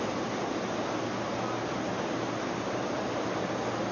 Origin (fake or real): real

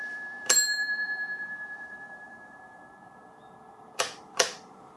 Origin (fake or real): fake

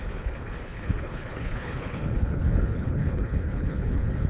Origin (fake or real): fake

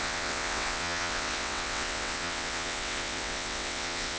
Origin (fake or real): fake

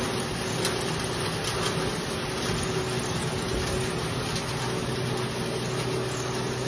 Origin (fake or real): real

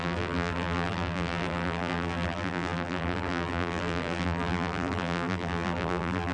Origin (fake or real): fake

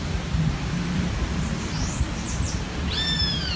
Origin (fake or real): fake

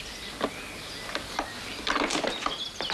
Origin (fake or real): real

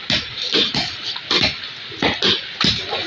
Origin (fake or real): real